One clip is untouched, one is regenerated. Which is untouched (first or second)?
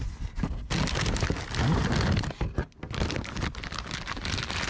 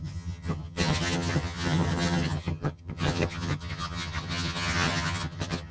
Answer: first